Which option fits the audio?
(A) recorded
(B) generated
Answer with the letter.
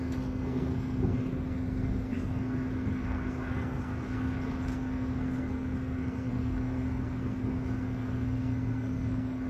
B